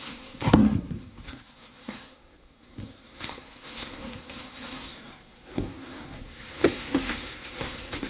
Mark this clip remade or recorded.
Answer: remade